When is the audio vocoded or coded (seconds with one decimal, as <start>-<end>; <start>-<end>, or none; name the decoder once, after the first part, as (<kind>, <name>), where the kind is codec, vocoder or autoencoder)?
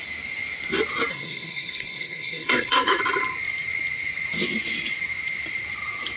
1.1-3.0 (codec, SNAC)